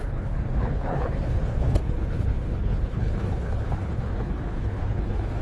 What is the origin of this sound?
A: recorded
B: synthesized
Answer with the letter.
B